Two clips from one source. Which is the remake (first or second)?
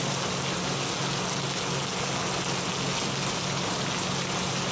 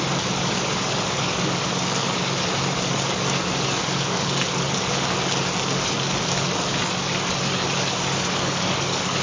second